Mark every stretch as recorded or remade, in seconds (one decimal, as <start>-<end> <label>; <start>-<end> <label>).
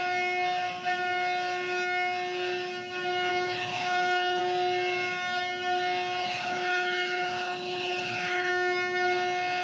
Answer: 0.0-3.3 recorded; 3.3-4.4 remade; 4.4-6.2 recorded; 6.2-8.5 remade; 8.5-9.6 recorded